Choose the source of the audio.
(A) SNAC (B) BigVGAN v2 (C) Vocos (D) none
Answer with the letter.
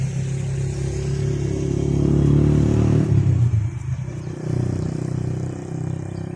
D